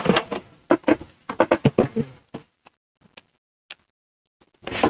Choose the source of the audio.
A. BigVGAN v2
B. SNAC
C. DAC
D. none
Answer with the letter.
D